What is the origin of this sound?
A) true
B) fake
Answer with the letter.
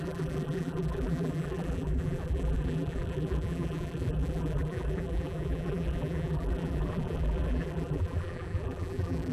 B